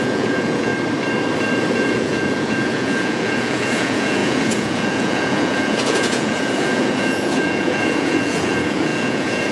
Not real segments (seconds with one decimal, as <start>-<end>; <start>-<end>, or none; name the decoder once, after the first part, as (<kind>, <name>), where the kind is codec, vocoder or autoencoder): 0.0-0.7 (vocoder, Vocos); 1.7-9.5